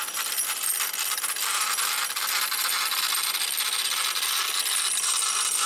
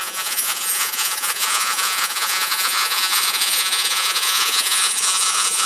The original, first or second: first